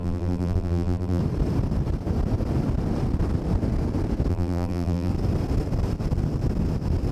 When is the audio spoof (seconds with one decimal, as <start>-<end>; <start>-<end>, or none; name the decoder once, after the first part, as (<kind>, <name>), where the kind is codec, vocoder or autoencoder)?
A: 0.0-1.2 (vocoder, BigVGAN v2); 4.3-5.1